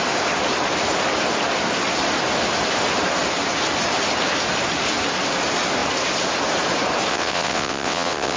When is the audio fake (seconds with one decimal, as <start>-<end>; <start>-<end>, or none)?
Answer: 7.1-8.4